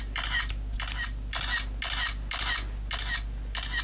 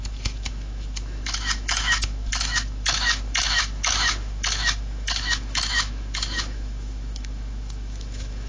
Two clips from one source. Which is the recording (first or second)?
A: first